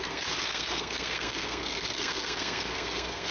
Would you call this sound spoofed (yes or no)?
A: yes